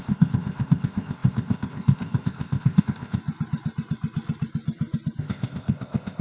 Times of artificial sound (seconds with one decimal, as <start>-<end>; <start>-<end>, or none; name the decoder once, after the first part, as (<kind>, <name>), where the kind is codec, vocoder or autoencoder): 0.0-3.2 (codec, ZipCodec); 5.2-6.2